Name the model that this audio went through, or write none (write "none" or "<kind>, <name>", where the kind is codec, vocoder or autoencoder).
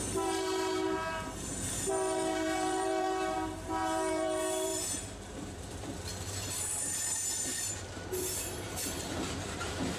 vocoder, BigVGAN v2